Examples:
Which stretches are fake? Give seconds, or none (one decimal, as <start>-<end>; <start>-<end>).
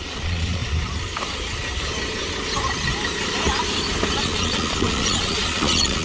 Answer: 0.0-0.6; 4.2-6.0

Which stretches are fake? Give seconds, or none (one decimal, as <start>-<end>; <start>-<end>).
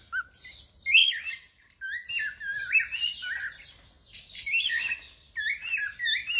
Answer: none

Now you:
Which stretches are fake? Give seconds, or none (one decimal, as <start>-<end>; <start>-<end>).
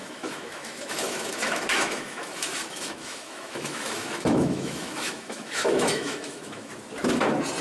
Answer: 0.0-6.7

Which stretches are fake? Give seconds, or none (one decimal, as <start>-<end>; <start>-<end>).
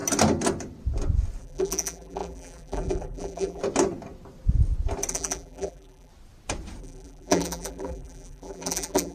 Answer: 1.4-3.6; 5.1-6.1; 6.8-9.1